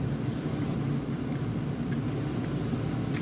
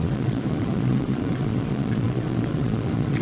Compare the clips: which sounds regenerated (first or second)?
second